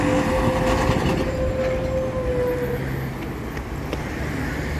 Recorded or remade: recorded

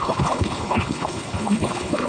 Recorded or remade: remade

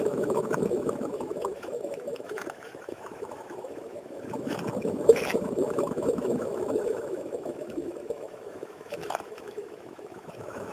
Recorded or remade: remade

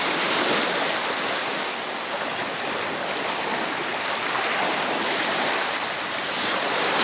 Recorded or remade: recorded